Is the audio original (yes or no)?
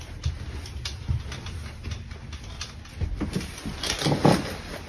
yes